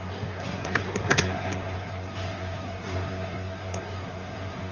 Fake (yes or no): yes